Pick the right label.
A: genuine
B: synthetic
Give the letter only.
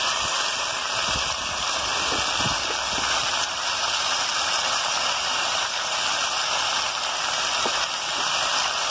A